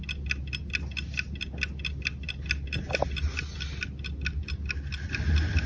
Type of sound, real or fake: real